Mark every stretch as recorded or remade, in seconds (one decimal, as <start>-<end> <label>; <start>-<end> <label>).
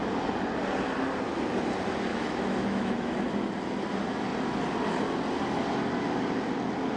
0.0-2.1 recorded; 2.1-3.2 remade; 3.2-7.0 recorded